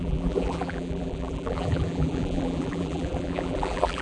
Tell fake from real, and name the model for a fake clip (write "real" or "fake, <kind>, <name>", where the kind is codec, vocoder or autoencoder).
fake, vocoder, BigVGAN v2